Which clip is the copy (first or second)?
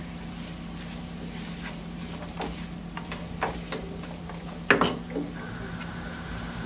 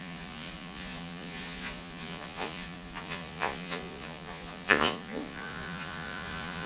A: second